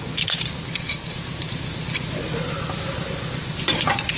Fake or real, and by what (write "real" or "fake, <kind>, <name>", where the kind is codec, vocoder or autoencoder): real